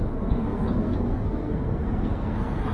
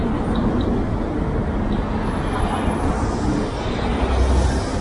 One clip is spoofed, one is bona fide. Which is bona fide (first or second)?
second